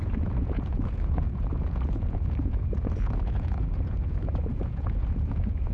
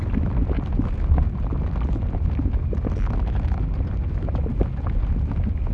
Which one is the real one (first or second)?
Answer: second